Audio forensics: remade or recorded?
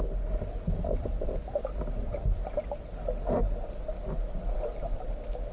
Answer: recorded